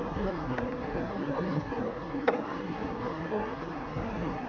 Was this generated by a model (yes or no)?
yes